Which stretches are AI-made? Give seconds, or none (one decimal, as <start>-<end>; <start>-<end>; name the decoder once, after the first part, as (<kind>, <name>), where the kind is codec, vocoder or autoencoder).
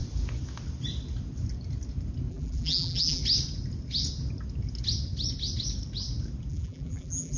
2.3-3.2 (vocoder, BigVGAN v2); 6.5-7.4